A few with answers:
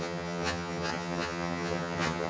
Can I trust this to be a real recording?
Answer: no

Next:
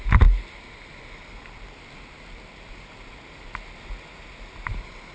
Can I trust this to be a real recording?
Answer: yes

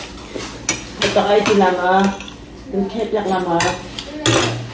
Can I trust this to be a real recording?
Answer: yes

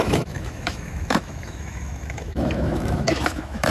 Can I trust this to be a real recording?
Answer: no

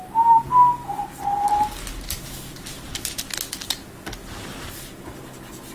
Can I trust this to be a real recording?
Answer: yes